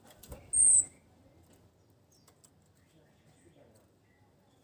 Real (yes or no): yes